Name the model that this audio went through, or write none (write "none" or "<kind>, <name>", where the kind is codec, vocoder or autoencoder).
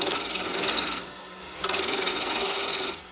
codec, SNAC